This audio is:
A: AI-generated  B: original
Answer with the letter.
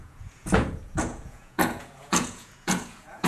A